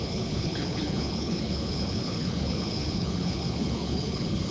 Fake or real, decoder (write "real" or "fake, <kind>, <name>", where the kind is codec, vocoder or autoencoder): fake, codec, HILCodec